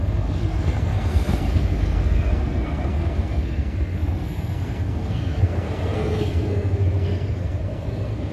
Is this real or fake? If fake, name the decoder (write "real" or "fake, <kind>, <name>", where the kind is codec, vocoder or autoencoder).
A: fake, codec, SNAC